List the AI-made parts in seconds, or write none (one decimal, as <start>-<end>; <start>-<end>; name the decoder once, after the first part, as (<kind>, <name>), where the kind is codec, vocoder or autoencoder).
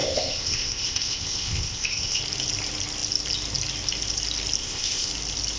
0.0-2.2 (codec, ZipCodec); 4.6-5.1